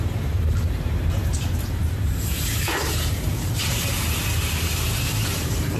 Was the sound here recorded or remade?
remade